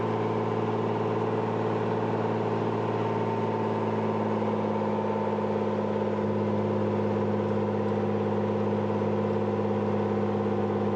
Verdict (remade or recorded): recorded